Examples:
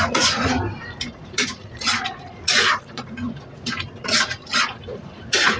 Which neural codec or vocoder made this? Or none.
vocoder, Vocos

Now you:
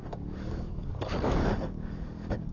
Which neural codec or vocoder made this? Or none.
codec, DAC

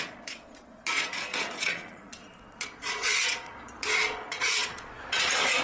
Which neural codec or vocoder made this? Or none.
vocoder, Vocos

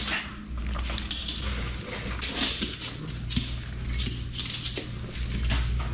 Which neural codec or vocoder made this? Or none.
none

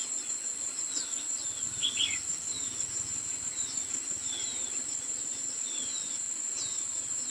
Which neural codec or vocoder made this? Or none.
none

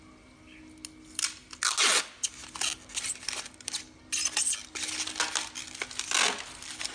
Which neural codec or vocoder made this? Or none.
none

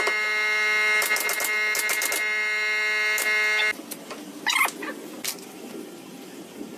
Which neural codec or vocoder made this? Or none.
none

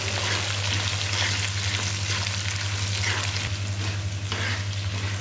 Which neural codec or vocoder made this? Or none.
none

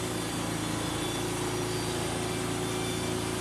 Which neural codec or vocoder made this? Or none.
none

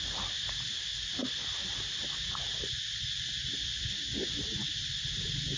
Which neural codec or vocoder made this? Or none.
none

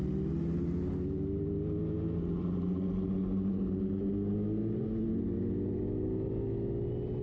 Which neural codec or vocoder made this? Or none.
none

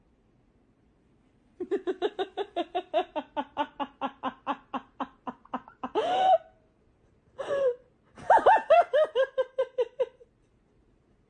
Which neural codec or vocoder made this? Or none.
vocoder, BigVGAN v2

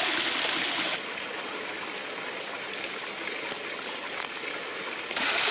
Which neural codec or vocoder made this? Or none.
none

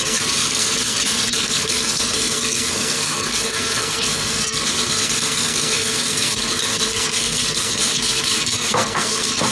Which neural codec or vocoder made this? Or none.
codec, SNAC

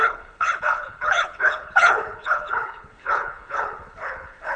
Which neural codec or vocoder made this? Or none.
codec, HILCodec